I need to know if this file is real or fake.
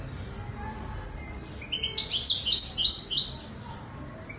real